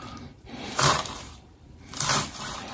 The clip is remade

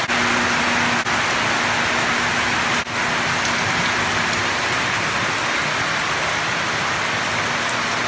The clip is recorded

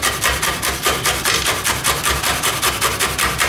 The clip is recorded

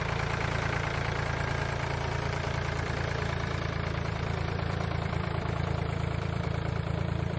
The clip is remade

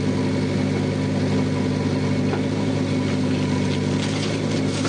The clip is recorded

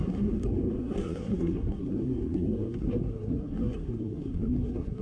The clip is remade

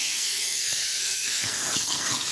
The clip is remade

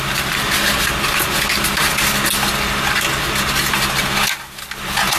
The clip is recorded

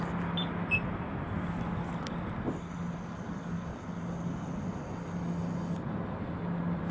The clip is recorded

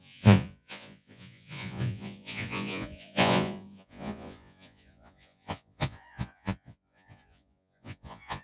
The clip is remade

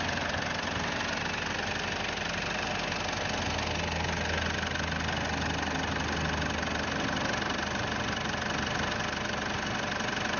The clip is recorded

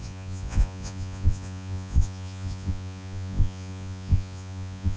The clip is remade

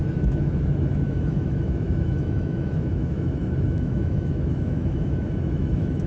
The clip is remade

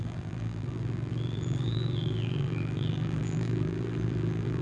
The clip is remade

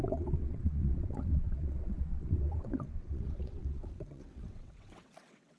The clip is remade